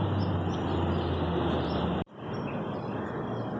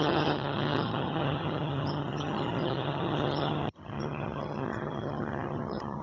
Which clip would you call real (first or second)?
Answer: first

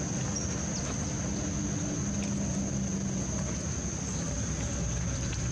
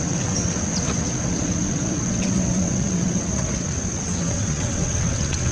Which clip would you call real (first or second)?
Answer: first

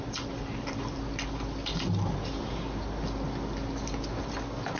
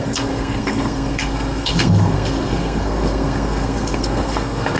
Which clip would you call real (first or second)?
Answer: first